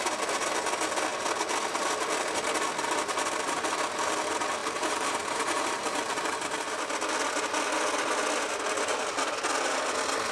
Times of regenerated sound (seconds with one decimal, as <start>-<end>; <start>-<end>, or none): 4.6-6.5